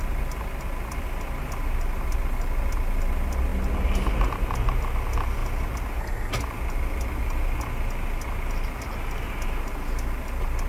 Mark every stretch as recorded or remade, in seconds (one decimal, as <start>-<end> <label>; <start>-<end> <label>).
0.0-10.7 recorded